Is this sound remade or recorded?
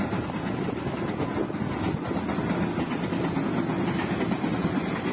recorded